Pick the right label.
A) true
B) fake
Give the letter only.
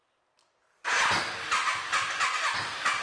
A